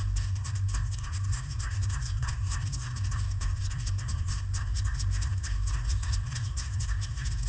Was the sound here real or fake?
fake